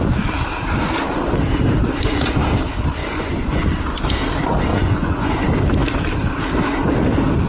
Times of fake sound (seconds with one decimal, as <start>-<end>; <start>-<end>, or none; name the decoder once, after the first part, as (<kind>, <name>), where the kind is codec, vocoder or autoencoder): 3.0-3.7 (vocoder, Vocos); 4.7-5.3